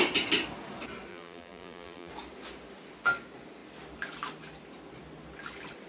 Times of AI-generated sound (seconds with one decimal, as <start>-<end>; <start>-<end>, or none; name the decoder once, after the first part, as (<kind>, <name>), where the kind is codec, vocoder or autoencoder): 1.1-2.1 (vocoder, BigVGAN v2)